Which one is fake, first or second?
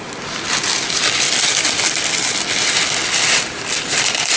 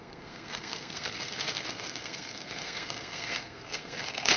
second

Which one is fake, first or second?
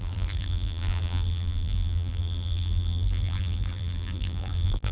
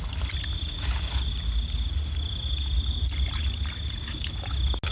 first